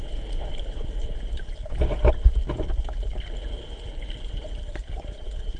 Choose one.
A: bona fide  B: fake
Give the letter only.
A